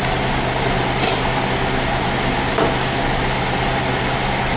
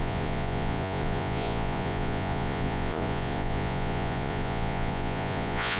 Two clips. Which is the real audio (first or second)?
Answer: first